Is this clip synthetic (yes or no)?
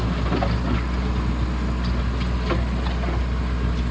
no